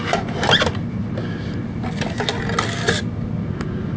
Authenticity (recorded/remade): recorded